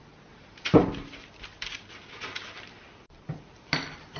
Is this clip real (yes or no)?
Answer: yes